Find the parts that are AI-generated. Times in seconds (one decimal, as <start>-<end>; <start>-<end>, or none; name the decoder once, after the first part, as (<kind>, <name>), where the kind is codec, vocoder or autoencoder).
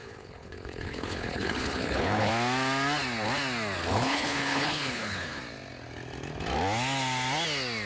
0.0-2.3 (codec, HILCodec); 3.9-5.4